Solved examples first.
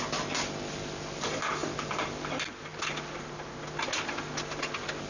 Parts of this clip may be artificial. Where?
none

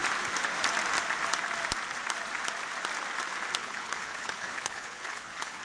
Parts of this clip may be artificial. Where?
3.6-5.6